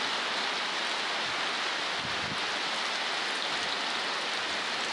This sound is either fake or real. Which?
real